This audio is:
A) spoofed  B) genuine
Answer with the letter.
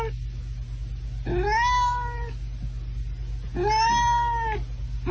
B